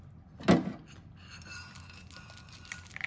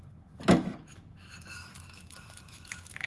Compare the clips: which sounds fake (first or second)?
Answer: second